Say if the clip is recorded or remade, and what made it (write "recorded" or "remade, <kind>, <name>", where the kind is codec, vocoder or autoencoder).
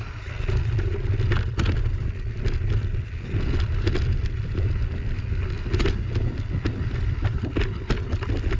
recorded